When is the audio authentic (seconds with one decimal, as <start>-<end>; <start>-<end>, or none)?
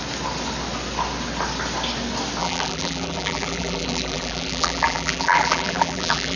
0.0-2.4